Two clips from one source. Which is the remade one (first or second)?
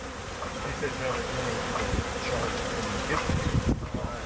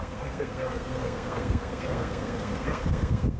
second